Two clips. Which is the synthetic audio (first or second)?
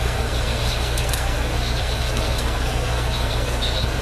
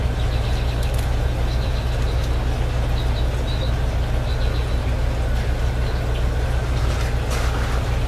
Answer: first